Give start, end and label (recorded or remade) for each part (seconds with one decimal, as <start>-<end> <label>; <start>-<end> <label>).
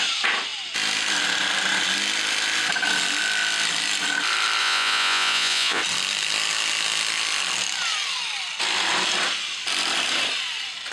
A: 0.0-4.6 recorded; 4.6-5.8 remade; 5.8-10.9 recorded